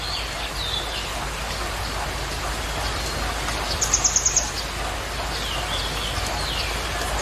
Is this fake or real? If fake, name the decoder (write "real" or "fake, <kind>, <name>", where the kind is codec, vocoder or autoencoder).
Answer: real